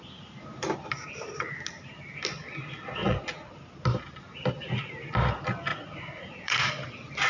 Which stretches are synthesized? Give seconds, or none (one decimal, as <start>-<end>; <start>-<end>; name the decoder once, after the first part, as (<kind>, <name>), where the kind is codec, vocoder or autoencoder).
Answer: 3.0-3.5 (vocoder, Vocos); 5.7-6.7